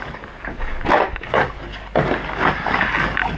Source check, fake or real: fake